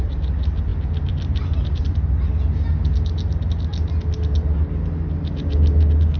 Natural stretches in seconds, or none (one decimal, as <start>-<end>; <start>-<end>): 0.0-0.7; 1.8-6.2